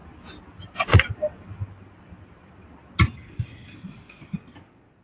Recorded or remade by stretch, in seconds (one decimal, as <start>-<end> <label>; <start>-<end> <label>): 0.0-5.0 recorded